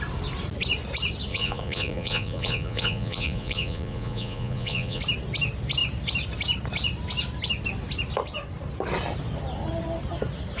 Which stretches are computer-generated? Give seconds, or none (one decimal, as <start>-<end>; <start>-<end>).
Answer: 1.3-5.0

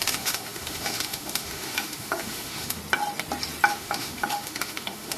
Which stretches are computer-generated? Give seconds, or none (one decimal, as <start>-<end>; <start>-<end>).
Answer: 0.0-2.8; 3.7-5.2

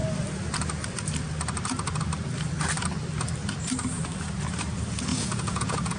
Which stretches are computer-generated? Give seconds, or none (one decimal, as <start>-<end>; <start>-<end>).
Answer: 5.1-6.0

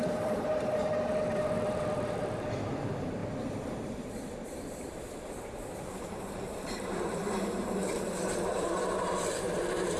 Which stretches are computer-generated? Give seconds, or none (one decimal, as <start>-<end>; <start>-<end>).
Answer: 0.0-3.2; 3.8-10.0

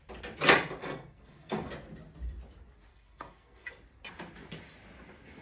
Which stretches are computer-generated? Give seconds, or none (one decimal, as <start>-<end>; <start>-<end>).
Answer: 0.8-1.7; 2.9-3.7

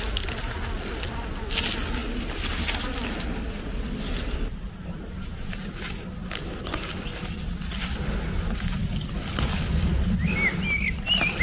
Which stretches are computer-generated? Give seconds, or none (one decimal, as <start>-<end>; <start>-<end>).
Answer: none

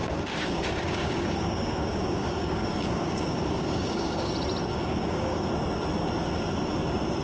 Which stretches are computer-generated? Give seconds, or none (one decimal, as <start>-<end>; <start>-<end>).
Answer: 0.0-4.3; 4.7-5.5